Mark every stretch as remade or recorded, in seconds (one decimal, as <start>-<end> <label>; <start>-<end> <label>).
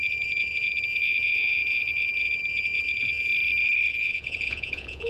0.0-3.3 remade; 3.3-3.9 recorded; 3.9-5.1 remade